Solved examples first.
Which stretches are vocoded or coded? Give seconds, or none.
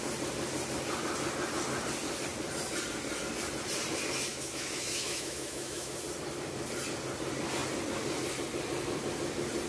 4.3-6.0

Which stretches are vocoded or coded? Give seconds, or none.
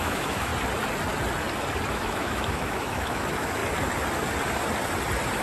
0.0-0.5; 1.9-3.6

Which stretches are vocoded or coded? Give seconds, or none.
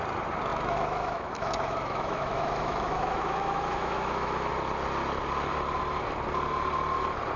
0.5-4.5